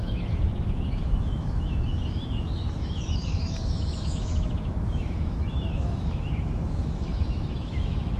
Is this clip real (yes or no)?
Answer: no